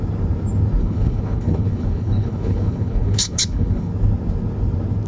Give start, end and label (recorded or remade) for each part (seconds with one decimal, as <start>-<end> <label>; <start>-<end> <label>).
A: 0.0-0.8 recorded; 0.8-3.9 remade; 3.9-5.1 recorded